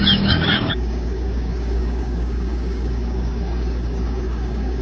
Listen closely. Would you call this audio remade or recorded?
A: remade